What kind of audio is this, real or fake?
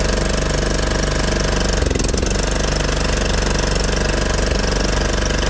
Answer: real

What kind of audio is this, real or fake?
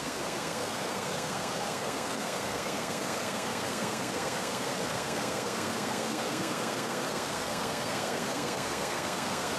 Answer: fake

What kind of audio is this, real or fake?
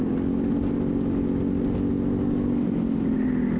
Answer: real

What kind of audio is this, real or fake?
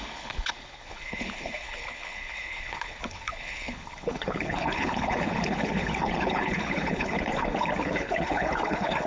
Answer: fake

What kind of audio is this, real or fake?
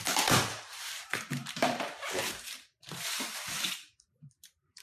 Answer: fake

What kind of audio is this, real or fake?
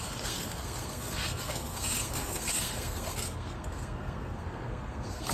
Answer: fake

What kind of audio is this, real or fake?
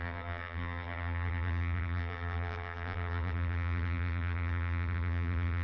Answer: fake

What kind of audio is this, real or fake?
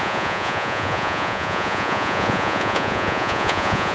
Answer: fake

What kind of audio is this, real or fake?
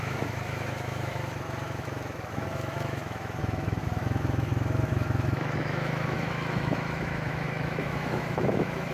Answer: fake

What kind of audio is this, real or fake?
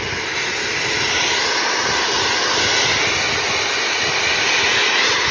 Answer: real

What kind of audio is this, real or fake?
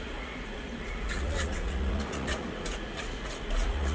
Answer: fake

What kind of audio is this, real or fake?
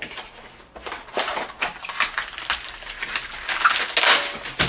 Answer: real